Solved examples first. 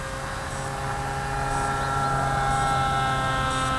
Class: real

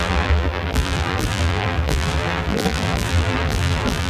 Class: fake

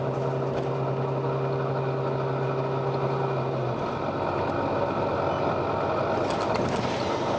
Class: real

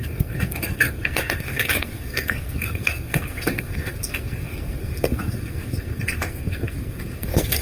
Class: fake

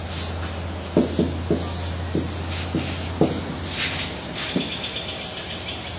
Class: real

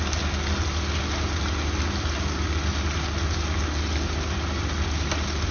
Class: real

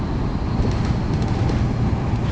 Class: fake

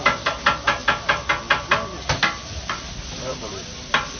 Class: real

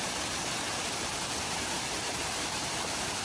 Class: fake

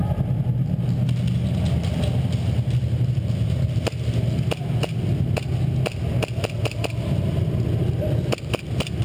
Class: real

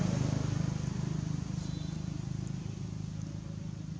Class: real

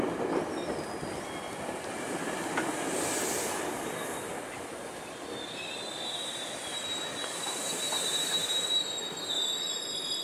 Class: real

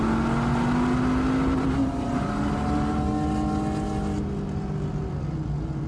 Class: real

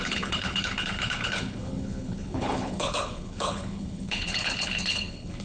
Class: fake